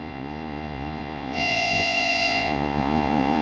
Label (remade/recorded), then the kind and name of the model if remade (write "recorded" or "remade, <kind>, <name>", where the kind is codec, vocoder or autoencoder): remade, vocoder, Vocos